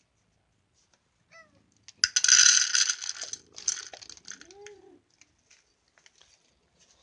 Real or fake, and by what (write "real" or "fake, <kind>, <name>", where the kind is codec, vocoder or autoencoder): real